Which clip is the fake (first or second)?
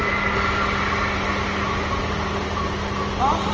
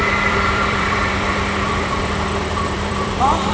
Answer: second